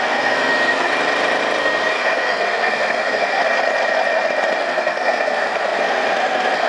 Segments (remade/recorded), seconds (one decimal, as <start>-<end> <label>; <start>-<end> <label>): 0.0-0.9 remade; 0.9-1.6 recorded; 1.6-3.4 remade; 3.4-4.6 recorded; 4.6-6.7 remade